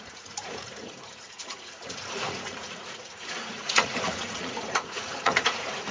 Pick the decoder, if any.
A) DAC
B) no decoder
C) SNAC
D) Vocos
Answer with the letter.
D